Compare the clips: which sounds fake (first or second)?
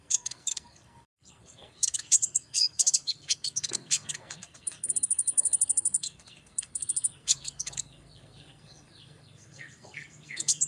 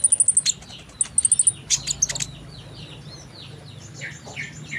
first